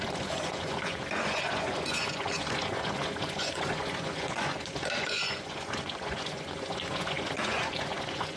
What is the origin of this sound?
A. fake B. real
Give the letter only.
A